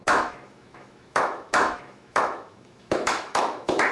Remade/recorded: remade